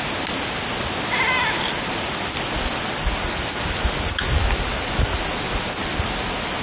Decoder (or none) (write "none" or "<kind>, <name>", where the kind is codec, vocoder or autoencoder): none